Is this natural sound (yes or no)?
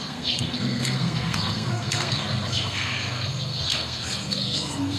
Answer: no